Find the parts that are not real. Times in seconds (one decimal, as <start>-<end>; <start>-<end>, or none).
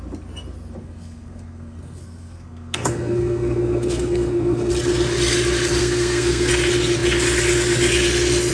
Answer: 0.8-4.7; 5.8-6.5